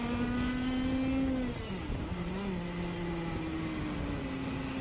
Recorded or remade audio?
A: recorded